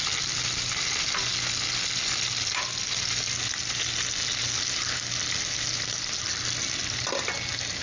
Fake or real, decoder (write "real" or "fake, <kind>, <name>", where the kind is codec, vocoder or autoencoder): real